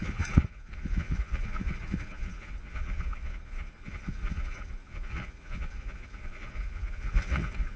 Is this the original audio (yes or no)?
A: no